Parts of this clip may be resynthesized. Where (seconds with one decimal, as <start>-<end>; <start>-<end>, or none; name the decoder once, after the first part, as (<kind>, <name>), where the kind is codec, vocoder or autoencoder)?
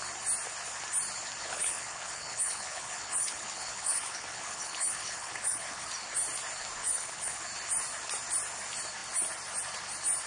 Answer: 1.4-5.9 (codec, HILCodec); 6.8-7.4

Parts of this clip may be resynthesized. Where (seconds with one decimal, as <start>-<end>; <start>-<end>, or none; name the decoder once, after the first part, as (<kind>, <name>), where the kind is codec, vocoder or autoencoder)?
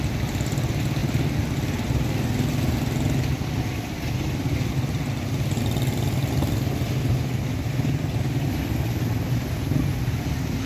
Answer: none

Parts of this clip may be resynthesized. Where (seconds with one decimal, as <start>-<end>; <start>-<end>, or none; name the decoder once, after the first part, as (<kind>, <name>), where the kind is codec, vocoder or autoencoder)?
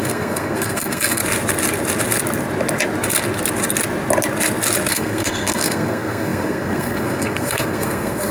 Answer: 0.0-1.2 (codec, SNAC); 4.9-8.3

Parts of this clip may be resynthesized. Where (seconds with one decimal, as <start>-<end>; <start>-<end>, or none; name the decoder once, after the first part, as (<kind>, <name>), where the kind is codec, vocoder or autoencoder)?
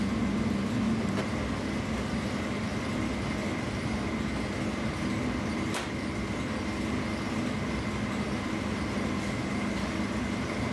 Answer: none